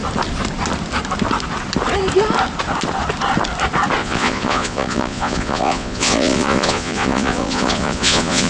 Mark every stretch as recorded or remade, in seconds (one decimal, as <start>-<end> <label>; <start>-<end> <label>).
0.0-4.0 recorded; 4.0-8.5 remade